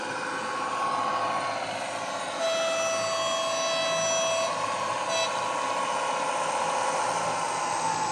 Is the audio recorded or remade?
recorded